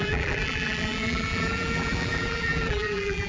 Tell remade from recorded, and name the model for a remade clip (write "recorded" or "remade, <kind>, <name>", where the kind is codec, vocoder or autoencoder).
remade, vocoder, BigVGAN v2